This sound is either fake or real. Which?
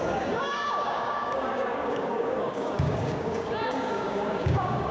fake